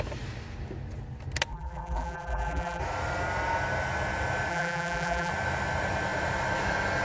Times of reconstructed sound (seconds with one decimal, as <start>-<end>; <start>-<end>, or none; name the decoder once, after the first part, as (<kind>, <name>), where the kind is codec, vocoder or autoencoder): 1.5-2.8 (vocoder, BigVGAN v2); 4.5-5.3